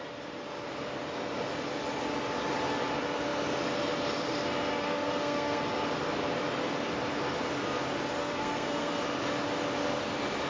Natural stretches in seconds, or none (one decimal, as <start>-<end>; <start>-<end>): 0.0-4.7; 5.6-8.2; 9.0-10.5